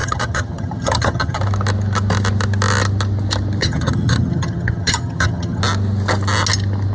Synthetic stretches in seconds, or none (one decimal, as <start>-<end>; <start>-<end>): 0.0-1.4; 3.6-5.6

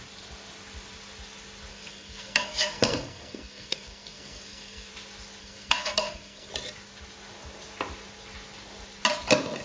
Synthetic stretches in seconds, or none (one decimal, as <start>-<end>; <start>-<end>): 1.7-4.9; 5.4-6.5

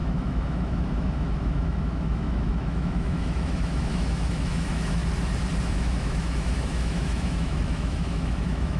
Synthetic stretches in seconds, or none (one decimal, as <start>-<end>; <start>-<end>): 0.0-5.0; 5.6-8.8

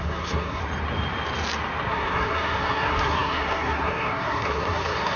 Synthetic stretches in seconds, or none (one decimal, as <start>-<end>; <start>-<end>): 0.0-0.6; 1.9-5.2

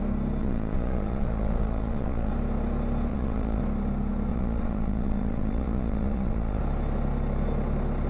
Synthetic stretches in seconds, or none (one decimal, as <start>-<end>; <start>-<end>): 0.4-2.3; 3.1-3.6; 4.3-6.6

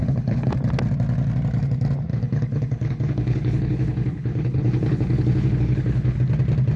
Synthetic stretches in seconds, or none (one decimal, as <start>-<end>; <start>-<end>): 0.0-0.5; 2.1-6.2

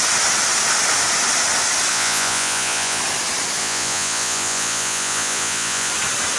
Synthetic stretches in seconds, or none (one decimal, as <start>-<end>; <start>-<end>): 1.9-3.0; 3.6-5.9